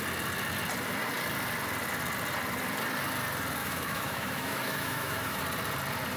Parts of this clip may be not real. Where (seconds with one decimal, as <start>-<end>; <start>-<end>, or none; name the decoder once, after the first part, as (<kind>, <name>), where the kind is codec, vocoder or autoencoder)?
3.6-5.4 (autoencoder, DAC-VAE)